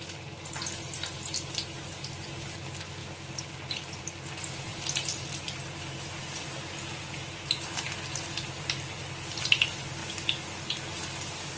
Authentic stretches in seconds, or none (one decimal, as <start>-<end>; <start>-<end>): 0.0-11.6